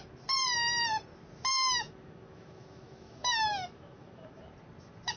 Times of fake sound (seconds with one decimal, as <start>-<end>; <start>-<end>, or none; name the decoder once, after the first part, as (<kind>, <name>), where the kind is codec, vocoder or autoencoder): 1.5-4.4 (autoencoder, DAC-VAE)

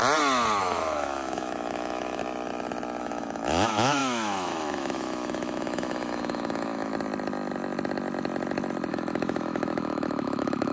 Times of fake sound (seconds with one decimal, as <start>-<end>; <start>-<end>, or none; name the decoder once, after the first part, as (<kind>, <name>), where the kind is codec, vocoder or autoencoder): 0.6-2.2 (autoencoder, DAC-VAE); 3.0-6.9; 8.9-10.7

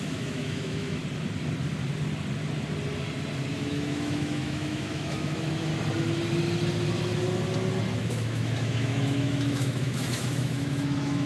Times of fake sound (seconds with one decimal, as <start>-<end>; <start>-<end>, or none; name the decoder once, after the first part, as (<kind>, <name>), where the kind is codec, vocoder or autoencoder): 0.0-1.0 (autoencoder, DAC-VAE); 3.5-5.7; 8.1-11.3